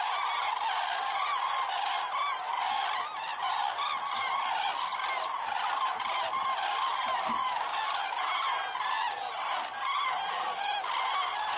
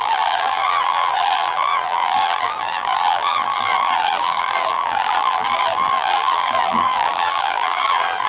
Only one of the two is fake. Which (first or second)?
second